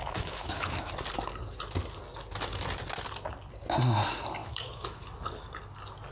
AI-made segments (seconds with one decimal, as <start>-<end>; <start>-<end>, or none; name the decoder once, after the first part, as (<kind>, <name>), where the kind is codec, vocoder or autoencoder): 0.0-0.9 (autoencoder, DAC-VAE); 4.4-5.0